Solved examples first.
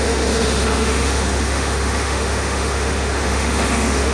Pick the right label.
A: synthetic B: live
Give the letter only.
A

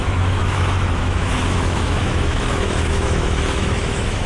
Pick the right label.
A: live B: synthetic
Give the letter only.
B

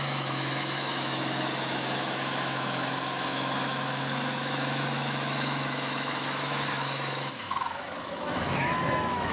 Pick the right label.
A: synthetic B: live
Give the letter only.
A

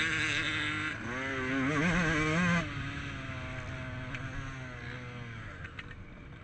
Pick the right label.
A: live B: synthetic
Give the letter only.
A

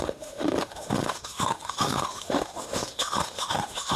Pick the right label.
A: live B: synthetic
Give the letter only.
B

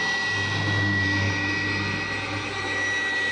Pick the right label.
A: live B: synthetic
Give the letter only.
A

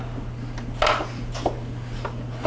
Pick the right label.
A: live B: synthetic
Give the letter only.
A